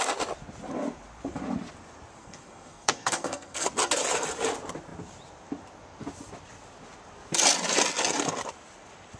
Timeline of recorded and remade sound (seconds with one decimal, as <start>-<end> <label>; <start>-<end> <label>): 0.0-2.2 recorded; 2.2-3.7 remade; 3.7-9.2 recorded